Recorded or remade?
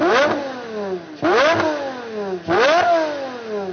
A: recorded